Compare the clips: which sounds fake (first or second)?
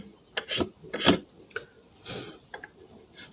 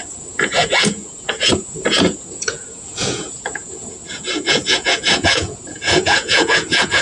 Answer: second